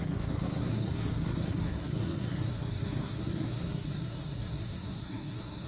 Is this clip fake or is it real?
fake